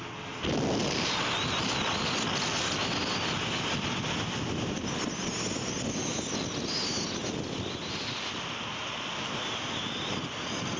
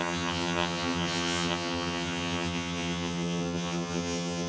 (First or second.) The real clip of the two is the first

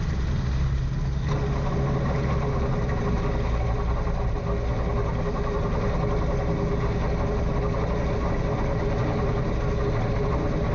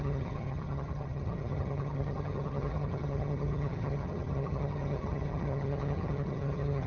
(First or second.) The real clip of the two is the first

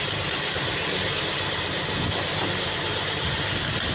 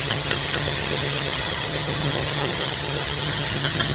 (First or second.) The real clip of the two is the first